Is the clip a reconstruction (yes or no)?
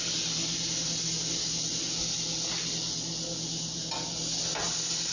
no